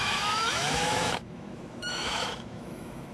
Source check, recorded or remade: remade